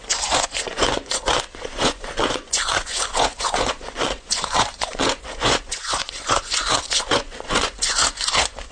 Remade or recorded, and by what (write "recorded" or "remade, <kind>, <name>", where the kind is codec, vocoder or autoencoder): remade, vocoder, Vocos